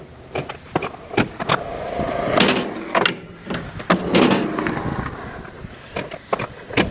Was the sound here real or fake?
real